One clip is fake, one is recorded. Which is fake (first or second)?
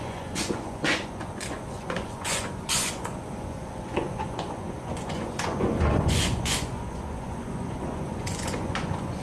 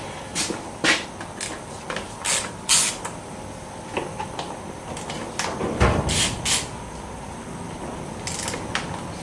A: first